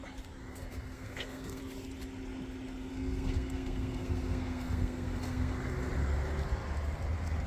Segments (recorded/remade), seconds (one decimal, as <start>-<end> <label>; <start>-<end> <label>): 0.0-0.5 recorded; 0.5-1.6 remade; 1.6-2.9 recorded; 2.9-5.9 remade; 5.9-7.5 recorded